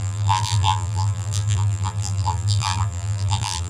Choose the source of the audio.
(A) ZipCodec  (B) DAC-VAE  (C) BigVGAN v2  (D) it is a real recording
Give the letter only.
C